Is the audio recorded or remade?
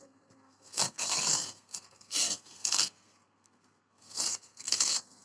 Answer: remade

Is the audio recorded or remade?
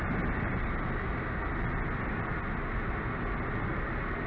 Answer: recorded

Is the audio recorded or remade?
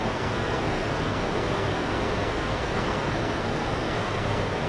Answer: remade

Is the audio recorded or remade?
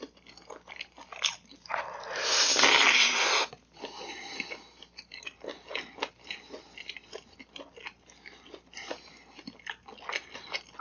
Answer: recorded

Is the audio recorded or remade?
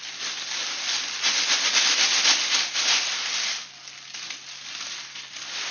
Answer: recorded